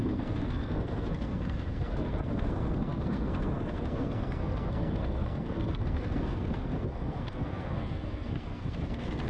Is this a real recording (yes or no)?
no